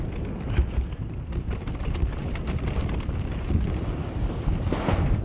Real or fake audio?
real